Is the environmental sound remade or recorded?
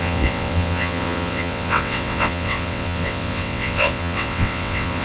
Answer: remade